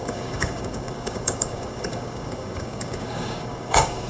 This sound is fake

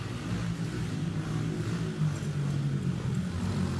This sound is real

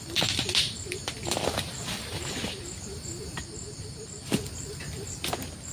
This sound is real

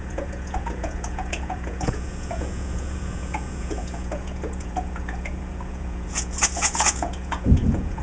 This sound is fake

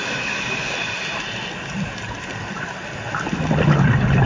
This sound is real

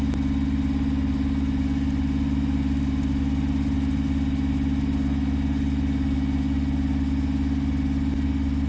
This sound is real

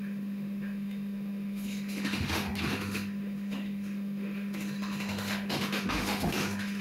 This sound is fake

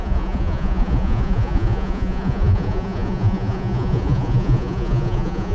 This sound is fake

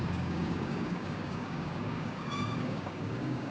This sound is fake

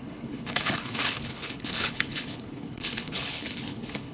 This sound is fake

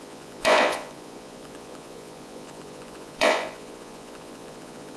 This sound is fake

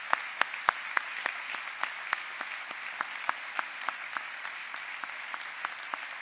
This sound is real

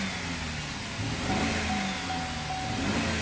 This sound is real